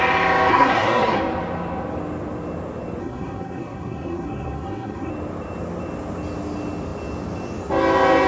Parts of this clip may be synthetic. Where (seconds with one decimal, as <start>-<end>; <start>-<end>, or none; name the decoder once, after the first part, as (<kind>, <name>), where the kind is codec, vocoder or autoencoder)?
0.5-1.2 (codec, SNAC); 3.0-5.1